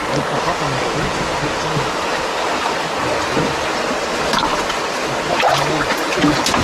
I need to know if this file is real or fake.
real